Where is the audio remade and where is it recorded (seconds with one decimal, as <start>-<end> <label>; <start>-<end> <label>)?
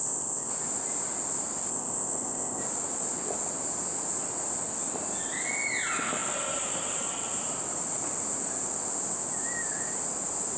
0.0-0.5 remade; 0.5-1.7 recorded; 1.7-2.6 remade; 2.6-10.6 recorded